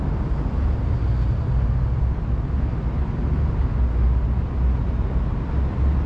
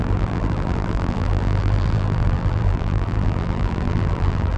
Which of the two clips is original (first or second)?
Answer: first